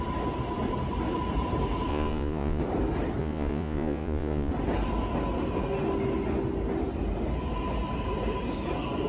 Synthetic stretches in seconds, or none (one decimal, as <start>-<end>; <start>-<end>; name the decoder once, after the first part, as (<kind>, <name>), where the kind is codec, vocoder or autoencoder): 1.9-2.6 (vocoder, Vocos); 3.2-4.5